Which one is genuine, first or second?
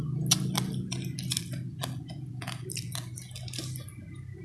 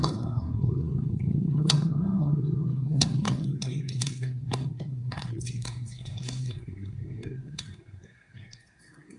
first